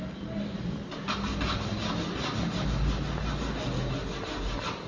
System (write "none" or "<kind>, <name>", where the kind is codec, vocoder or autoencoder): none